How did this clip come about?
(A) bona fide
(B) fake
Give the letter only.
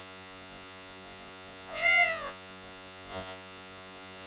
B